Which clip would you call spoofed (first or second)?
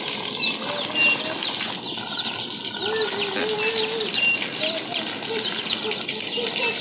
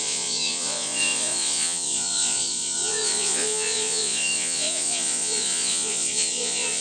second